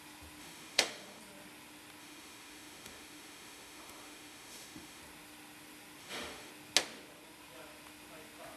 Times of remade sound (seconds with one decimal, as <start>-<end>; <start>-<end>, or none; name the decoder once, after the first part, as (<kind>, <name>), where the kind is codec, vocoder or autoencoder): 0.4-1.2 (autoencoder, DAC-VAE); 2.0-5.0; 6.0-6.5